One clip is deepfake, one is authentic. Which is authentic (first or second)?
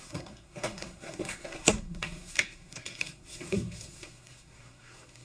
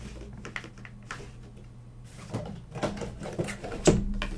second